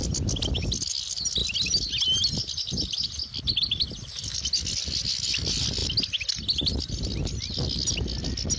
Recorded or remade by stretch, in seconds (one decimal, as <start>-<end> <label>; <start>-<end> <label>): 0.0-8.6 recorded